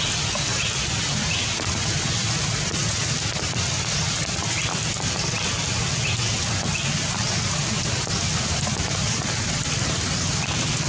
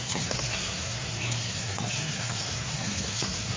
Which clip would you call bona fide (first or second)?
first